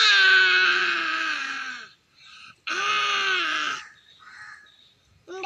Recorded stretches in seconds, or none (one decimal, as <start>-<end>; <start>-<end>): 0.0-5.5

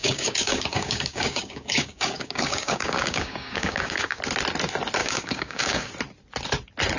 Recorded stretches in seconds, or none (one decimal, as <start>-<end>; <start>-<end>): 4.2-5.0; 5.9-7.0

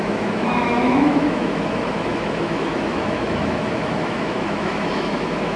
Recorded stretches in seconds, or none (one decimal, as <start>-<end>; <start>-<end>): none

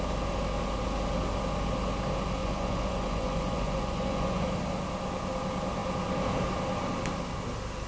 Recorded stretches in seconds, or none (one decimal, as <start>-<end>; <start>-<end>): 0.0-2.4; 4.4-7.9

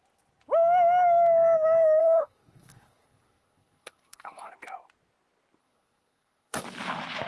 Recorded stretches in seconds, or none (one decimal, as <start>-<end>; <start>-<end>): 0.0-2.0; 4.5-5.6; 6.6-7.3

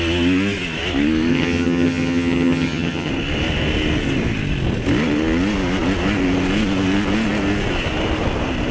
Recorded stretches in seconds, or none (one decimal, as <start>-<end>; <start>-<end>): 0.0-1.3; 3.1-8.7